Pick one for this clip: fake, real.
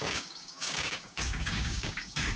fake